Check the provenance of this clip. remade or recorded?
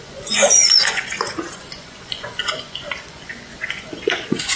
remade